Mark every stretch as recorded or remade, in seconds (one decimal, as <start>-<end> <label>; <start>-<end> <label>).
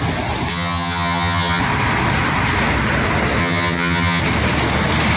0.0-0.5 recorded; 0.5-1.6 remade; 1.6-3.4 recorded; 3.4-4.2 remade; 4.2-5.2 recorded